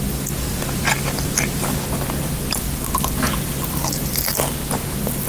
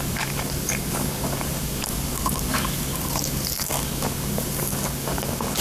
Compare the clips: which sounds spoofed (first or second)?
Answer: second